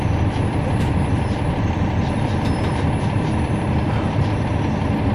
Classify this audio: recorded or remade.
remade